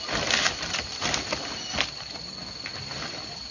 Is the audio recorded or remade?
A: recorded